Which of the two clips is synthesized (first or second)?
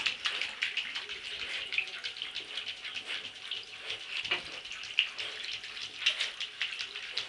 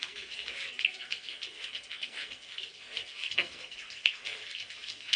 second